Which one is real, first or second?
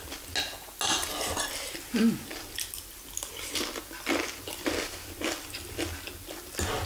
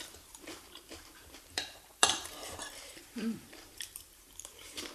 first